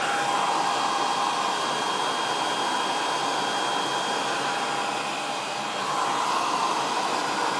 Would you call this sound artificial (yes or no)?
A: no